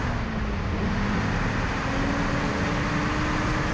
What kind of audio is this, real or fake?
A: real